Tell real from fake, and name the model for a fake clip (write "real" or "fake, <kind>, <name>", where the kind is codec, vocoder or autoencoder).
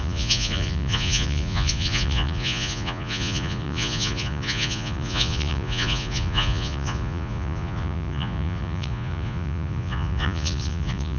fake, vocoder, Vocos